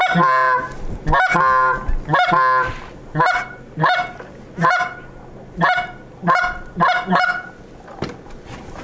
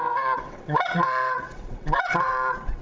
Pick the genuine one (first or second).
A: first